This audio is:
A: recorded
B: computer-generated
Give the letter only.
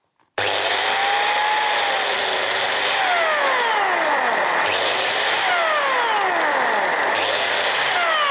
A